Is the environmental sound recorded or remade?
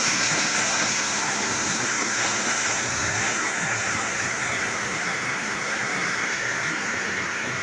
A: remade